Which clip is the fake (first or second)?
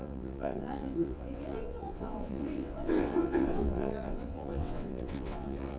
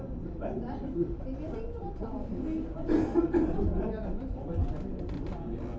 first